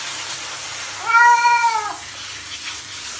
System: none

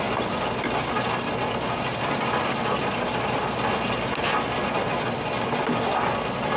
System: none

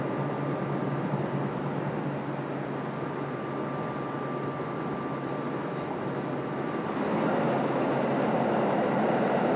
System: none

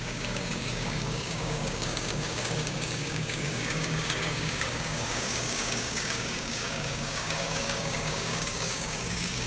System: codec, DAC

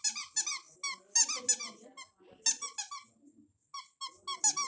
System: none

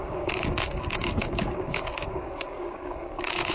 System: codec, DAC